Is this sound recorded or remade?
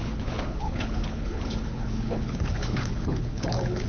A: remade